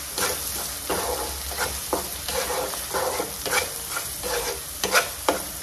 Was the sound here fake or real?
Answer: real